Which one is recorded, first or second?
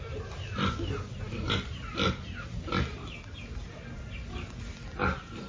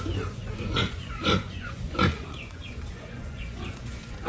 first